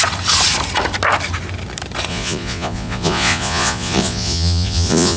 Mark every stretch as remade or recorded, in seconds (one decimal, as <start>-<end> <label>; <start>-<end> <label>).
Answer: 0.0-2.1 recorded; 2.1-5.2 remade